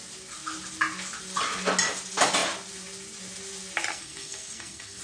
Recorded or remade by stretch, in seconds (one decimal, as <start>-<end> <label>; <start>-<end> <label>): 0.0-3.9 recorded; 3.9-5.0 remade